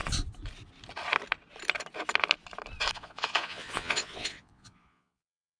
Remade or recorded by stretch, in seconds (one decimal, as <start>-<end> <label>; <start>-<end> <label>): 0.0-2.9 recorded; 2.9-5.6 remade